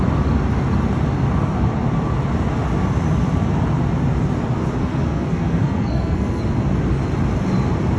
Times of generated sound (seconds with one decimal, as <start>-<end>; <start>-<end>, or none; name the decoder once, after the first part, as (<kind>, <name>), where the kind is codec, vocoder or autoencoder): 4.8-6.4 (codec, SNAC)